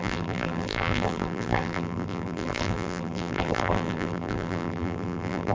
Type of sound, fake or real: fake